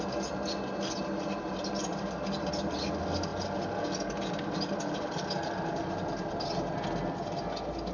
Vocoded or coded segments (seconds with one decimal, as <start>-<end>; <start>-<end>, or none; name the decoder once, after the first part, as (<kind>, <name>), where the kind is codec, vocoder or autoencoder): none